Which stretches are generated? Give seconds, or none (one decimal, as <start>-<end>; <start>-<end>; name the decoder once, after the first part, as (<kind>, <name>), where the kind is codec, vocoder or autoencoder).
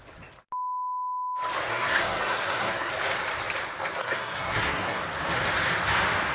1.7-2.9 (codec, SNAC); 4.0-5.0